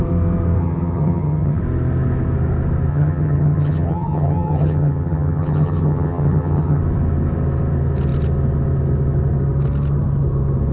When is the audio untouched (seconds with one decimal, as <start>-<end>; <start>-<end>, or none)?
0.0-0.6; 1.6-2.9; 6.8-10.7